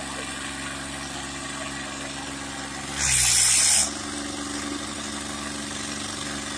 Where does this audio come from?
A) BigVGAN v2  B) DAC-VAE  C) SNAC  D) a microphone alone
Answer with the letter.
D